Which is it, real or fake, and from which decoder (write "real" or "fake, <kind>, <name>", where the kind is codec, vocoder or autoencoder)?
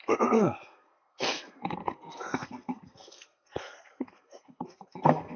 fake, codec, SNAC